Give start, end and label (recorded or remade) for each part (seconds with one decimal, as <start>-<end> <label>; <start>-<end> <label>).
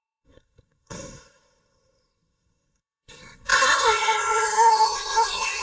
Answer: 0.0-5.6 remade